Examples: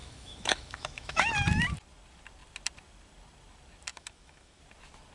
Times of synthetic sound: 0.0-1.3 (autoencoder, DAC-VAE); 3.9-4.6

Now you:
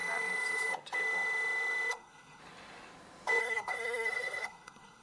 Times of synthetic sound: 1.9-2.4 (codec, SNAC); 3.4-5.0

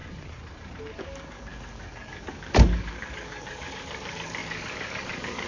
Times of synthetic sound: 0.8-5.5 (codec, DAC)

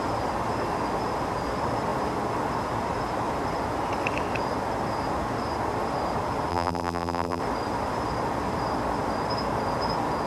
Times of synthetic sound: 6.5-7.4 (vocoder, BigVGAN v2)

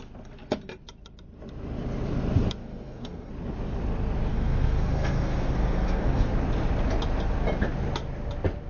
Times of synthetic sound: 2.6-3.3 (codec, SNAC); 4.3-6.3

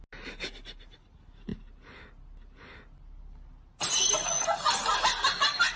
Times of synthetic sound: none

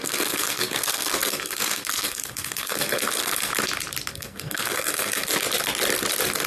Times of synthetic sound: 0.0-3.5 (codec, SNAC); 4.1-5.3

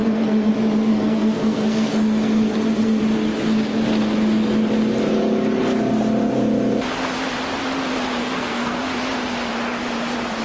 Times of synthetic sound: 0.0-0.5 (codec, SNAC); 0.9-3.0; 8.2-8.8